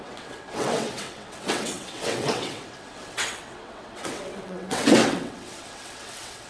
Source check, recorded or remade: remade